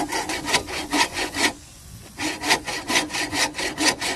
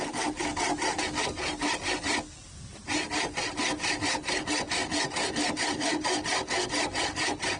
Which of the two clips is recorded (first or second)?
second